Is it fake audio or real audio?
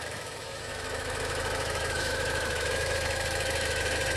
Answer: fake